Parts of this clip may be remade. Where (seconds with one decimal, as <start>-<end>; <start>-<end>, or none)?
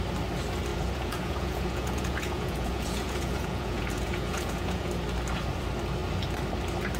0.7-4.9